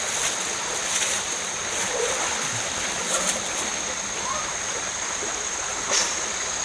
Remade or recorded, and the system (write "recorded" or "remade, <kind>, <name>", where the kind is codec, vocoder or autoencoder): recorded